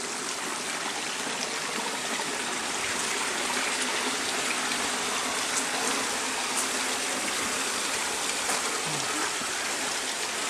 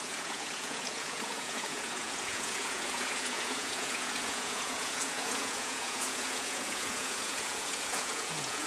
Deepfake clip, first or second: second